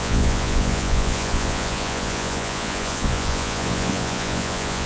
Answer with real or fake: fake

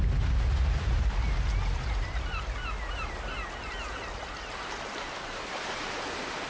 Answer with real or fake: real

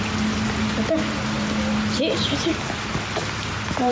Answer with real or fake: real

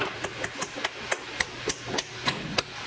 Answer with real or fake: real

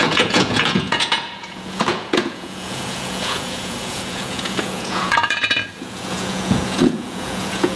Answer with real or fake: fake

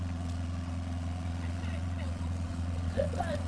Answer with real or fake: fake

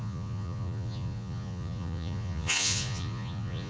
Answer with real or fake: fake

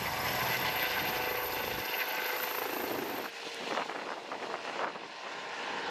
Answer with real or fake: real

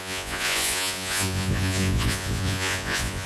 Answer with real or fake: fake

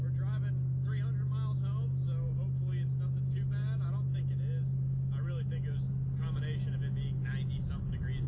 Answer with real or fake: real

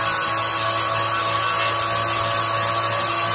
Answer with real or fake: real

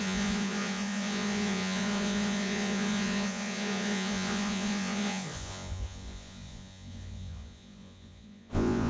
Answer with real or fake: fake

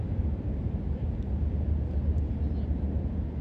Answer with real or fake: real